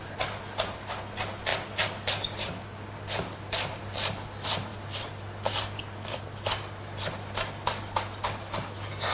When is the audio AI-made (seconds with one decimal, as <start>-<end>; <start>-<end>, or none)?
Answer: none